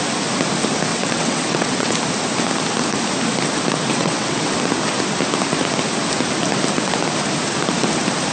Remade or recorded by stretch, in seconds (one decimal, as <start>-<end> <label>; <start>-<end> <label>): 0.0-0.9 recorded; 0.9-2.0 remade; 2.0-3.9 recorded; 3.9-4.5 remade; 4.5-8.3 recorded